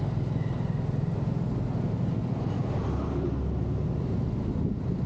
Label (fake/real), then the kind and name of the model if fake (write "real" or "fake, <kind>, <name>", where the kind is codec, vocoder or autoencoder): real